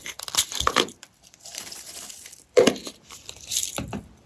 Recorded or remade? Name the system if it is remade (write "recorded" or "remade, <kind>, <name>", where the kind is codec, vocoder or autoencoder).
remade, vocoder, BigVGAN v2